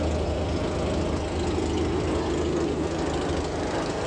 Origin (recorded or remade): recorded